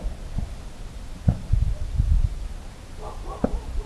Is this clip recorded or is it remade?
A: recorded